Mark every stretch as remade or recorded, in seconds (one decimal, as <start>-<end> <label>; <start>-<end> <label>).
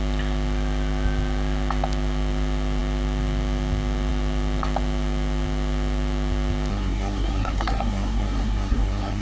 0.0-6.7 recorded; 6.7-9.2 remade